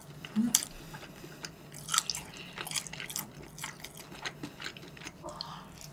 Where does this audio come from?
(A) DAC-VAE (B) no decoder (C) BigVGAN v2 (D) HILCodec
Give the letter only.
B